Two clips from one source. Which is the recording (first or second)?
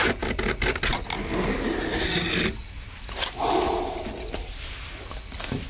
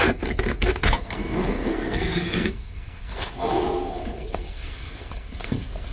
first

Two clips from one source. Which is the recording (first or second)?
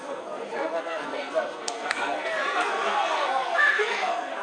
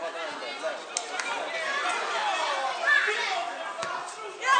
second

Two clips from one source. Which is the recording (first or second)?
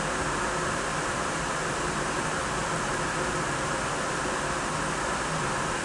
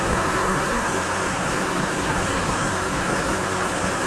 first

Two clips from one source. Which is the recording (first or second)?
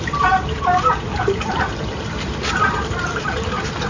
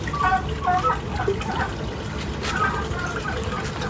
second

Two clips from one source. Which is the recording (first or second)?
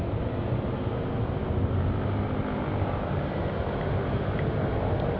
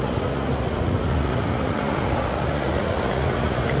first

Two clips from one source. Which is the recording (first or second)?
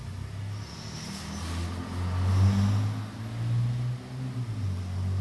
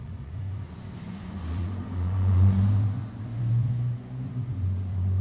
first